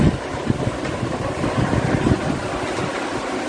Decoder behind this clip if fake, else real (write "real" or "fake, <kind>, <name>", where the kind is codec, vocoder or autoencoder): real